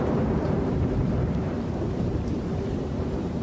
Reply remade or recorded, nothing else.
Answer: remade